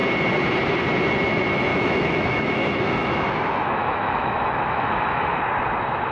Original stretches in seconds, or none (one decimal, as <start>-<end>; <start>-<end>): 0.0-1.7; 5.4-6.1